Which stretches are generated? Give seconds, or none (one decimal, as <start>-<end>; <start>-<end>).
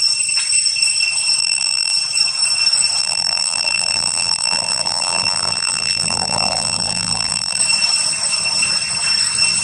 1.4-1.9; 3.0-7.6